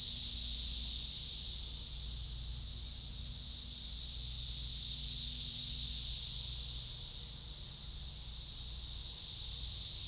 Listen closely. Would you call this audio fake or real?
real